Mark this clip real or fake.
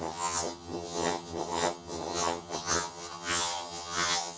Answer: fake